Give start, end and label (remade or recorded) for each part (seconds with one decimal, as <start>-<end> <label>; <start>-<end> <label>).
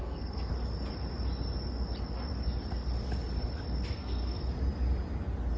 0.0-0.5 remade; 0.5-3.9 recorded; 3.9-4.4 remade; 4.4-5.6 recorded